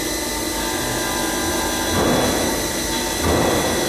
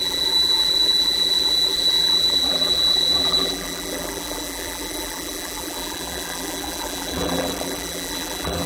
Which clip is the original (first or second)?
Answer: first